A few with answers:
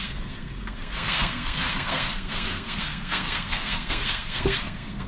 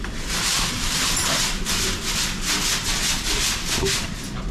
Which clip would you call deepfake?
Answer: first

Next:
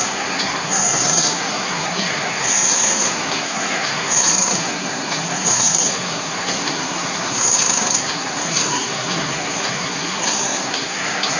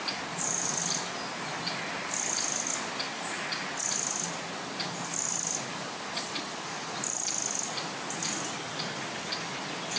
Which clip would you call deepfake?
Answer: first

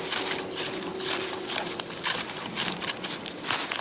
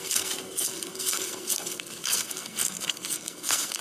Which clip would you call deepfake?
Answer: second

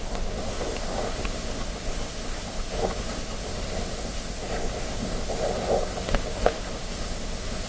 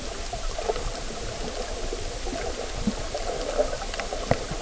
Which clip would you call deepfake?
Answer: first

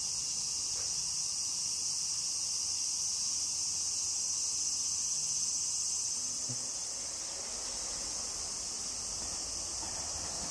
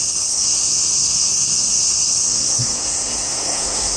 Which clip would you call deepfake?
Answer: second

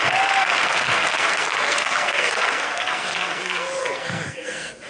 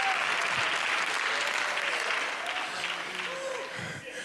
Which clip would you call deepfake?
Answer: first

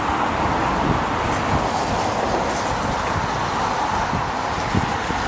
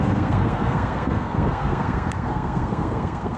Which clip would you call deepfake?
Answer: second